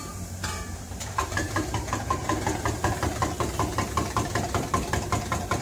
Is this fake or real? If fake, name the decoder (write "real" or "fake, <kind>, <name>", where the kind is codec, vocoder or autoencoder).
fake, vocoder, BigVGAN v2